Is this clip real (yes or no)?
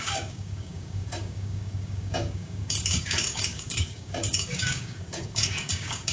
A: no